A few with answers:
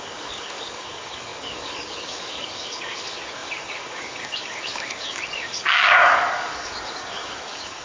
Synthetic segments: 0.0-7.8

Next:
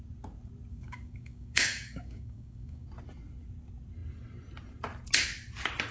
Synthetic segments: 0.7-2.9